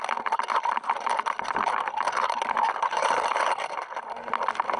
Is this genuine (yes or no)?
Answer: yes